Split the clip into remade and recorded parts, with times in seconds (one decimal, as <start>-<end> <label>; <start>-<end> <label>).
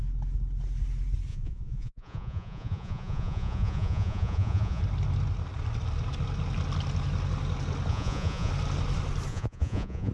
0.0-1.3 recorded; 1.3-4.8 remade; 4.8-7.9 recorded; 7.9-8.5 remade; 8.5-9.3 recorded; 9.3-10.1 remade